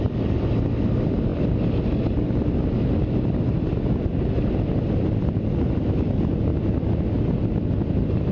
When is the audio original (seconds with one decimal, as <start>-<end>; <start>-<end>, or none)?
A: 0.0-8.3